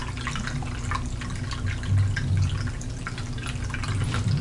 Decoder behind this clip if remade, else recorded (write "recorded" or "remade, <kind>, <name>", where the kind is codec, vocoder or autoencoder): recorded